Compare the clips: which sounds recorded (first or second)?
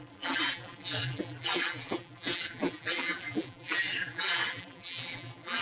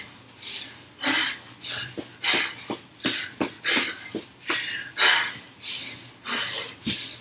second